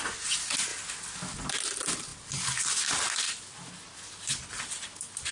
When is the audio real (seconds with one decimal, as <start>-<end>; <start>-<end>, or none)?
0.0-5.3